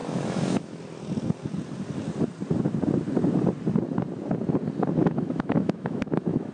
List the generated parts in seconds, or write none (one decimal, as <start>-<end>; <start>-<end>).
0.0-0.8; 5.0-6.5